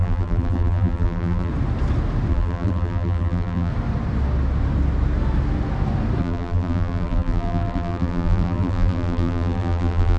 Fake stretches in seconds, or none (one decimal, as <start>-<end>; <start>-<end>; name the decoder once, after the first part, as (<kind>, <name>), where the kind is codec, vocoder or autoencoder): 0.0-1.5 (vocoder, BigVGAN v2); 2.3-3.7; 6.2-10.2